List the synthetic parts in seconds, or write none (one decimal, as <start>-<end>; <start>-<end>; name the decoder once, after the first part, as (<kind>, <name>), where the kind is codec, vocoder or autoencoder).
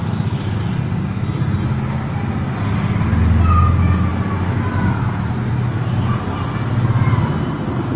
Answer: none